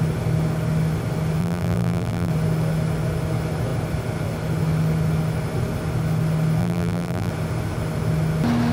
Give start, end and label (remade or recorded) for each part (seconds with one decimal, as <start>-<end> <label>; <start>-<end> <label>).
0.0-1.4 recorded; 1.4-2.3 remade; 2.3-6.6 recorded; 6.6-7.3 remade; 7.3-8.7 recorded